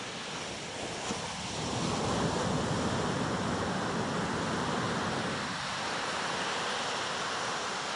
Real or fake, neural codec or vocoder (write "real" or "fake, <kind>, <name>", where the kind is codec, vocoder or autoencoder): real